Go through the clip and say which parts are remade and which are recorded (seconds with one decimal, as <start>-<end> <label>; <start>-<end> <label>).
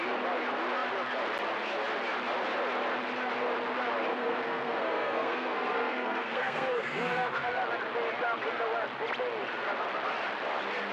0.0-4.1 recorded; 4.1-7.6 remade; 7.6-10.9 recorded